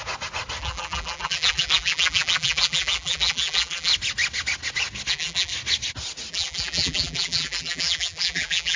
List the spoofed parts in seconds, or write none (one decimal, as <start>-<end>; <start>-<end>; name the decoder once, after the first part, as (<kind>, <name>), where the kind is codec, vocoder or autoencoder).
0.6-3.9 (vocoder, BigVGAN v2); 5.1-5.5; 6.3-8.8